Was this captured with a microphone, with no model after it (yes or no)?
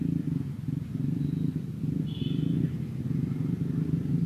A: yes